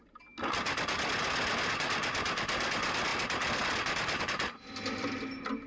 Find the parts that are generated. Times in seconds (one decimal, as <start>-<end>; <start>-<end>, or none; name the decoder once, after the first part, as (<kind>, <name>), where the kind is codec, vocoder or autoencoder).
none